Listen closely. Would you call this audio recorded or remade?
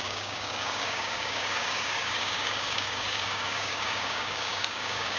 remade